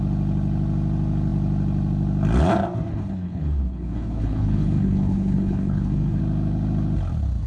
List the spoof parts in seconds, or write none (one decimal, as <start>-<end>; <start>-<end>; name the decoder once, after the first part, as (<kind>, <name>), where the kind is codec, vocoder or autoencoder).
2.9-6.2 (codec, HILCodec)